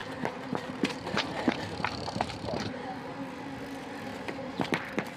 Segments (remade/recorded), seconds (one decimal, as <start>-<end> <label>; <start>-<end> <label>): 0.0-3.1 remade; 3.1-4.1 recorded; 4.1-4.7 remade; 4.7-5.2 recorded